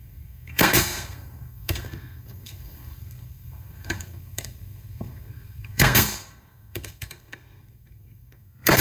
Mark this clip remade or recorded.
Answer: remade